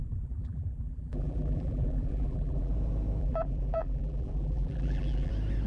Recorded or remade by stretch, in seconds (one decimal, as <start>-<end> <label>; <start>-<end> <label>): 0.0-2.7 remade; 2.7-3.2 recorded; 3.2-5.3 remade; 5.3-5.7 recorded